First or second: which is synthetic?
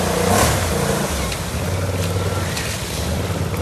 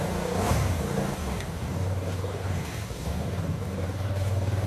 second